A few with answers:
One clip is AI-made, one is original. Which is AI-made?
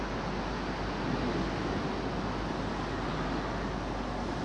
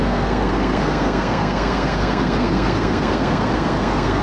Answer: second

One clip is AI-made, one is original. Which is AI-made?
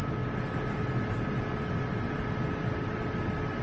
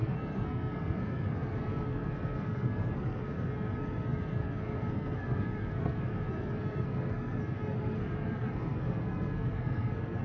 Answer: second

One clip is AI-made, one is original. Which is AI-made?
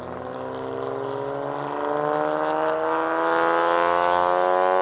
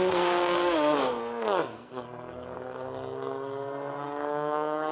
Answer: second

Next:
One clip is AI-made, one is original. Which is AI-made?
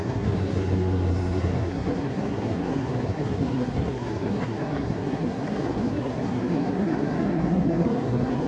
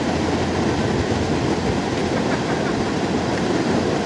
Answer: first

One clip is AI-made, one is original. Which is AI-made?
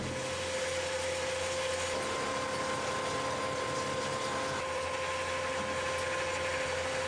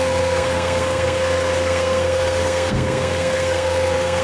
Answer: second